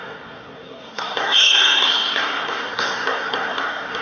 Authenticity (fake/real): fake